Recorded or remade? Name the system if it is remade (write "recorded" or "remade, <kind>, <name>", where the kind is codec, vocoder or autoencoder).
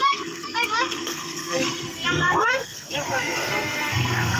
remade, codec, SNAC